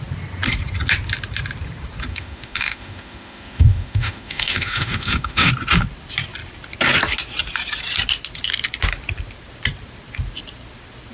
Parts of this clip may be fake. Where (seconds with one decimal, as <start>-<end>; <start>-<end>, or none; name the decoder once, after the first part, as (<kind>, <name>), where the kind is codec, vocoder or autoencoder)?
2.1-5.5 (autoencoder, DAC-VAE)